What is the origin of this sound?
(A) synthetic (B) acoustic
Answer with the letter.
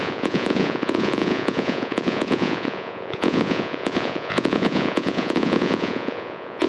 A